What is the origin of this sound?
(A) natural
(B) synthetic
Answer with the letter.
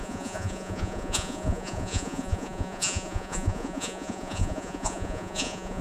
B